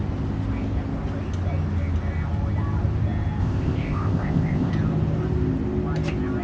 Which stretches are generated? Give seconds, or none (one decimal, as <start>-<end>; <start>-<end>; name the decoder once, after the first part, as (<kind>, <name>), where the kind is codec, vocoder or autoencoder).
3.4-4.7 (codec, ZipCodec)